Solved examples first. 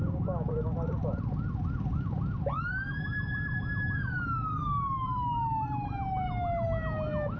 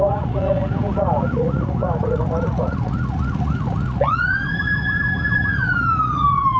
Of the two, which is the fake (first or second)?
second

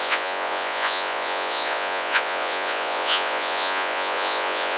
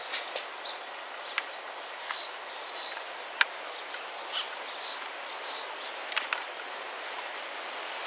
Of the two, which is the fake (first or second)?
first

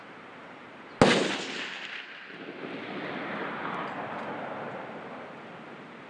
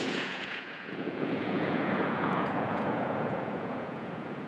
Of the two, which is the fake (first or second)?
second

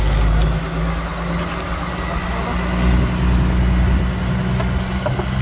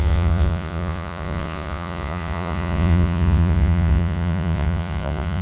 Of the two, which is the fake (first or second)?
second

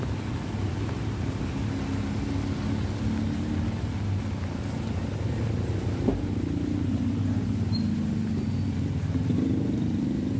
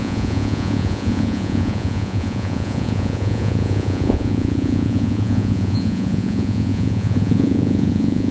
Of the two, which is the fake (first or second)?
second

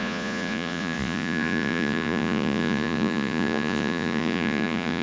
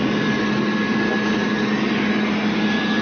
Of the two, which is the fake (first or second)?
first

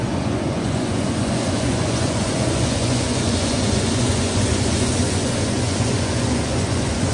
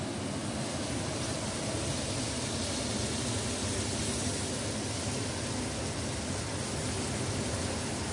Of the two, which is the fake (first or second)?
first